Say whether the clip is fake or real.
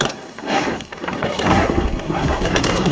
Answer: fake